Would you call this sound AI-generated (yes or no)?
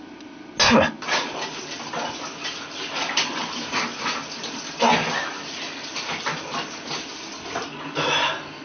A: no